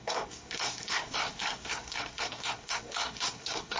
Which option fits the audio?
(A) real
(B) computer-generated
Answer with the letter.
B